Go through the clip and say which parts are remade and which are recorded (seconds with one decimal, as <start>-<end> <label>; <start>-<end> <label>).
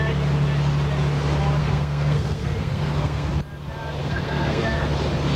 0.0-1.6 recorded; 1.6-3.3 remade; 3.3-4.0 recorded; 4.0-4.9 remade; 4.9-5.4 recorded